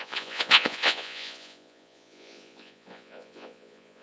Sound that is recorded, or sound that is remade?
remade